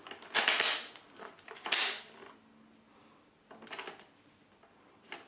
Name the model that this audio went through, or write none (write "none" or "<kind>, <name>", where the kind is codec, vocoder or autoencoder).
none